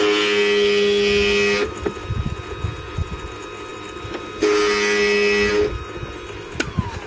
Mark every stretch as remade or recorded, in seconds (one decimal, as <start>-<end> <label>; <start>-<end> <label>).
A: 0.0-7.1 recorded